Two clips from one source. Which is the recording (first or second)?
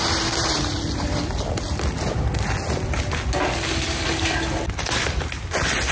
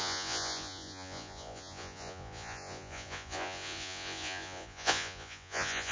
first